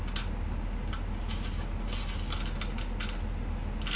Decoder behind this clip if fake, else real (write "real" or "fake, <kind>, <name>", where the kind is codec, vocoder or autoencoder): real